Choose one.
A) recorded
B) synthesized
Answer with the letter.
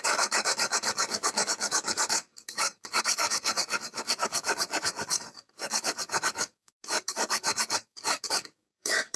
B